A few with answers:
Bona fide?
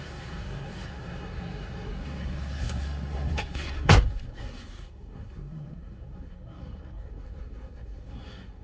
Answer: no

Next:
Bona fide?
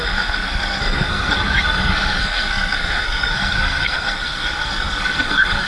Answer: no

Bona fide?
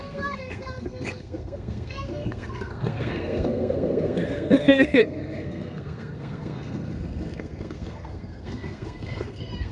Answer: no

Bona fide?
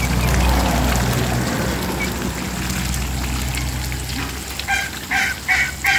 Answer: yes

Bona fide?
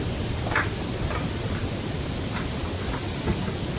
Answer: yes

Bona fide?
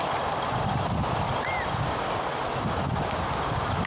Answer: yes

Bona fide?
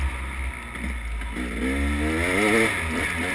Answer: yes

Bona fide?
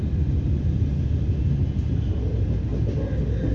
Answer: yes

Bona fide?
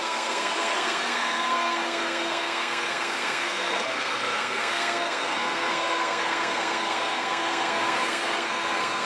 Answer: no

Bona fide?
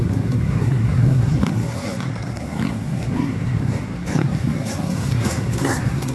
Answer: no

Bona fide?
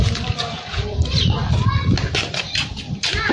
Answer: yes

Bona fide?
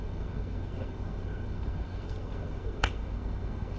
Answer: no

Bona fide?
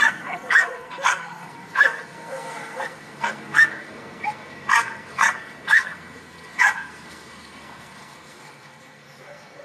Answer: no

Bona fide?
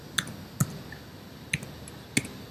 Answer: yes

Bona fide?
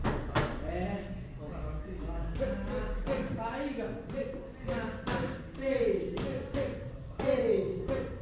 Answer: yes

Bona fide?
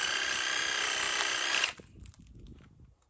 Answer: yes